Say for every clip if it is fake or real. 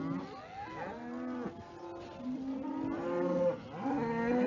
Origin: real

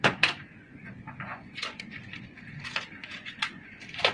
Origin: fake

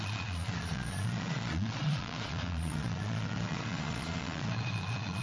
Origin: fake